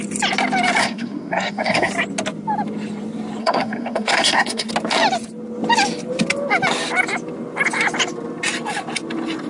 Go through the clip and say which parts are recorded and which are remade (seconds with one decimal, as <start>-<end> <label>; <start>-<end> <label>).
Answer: 0.0-0.8 recorded; 0.8-1.9 remade; 1.9-3.4 recorded; 3.4-4.7 remade; 4.7-9.5 recorded